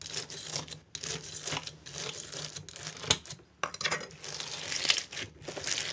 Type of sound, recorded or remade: recorded